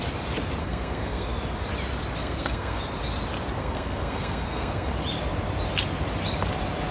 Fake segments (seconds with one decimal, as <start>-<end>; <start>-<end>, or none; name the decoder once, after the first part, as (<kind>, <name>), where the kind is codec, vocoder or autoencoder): 0.6-1.4 (codec, SNAC); 2.2-2.8; 3.6-4.9